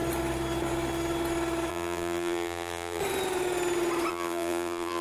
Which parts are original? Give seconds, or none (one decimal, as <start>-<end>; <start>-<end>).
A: 0.0-1.7; 3.0-4.1